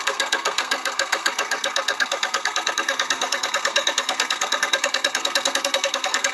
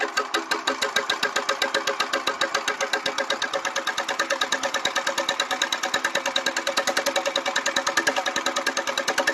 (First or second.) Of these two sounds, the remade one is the first